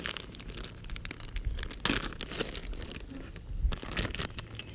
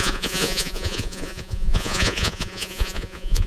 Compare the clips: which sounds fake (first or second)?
second